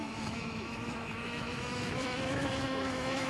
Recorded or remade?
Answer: remade